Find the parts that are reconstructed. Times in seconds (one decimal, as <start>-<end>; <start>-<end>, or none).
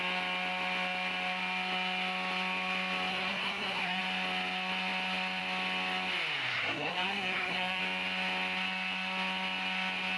3.1-4.0; 6.5-7.8